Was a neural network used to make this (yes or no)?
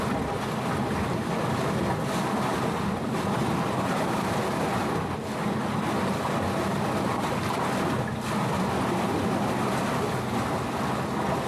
no